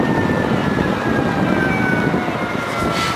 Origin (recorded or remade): recorded